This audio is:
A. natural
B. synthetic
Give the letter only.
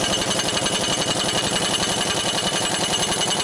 A